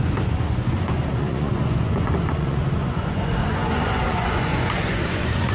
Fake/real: fake